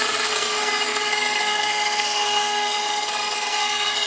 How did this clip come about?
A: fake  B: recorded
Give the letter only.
A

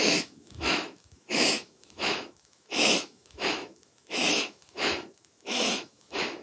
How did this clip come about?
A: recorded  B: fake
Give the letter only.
B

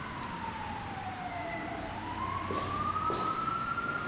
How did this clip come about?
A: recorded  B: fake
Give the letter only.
B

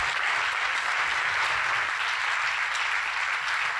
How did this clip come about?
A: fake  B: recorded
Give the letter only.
B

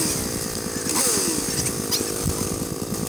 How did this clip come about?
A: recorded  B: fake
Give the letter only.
A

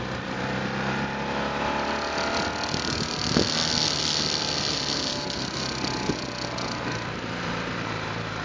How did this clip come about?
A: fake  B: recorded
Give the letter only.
B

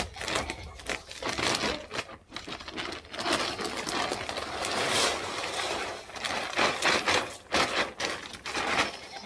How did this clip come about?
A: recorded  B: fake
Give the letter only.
A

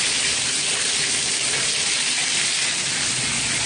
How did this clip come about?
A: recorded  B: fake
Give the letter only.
A